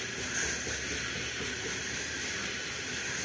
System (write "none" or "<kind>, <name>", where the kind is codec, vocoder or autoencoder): none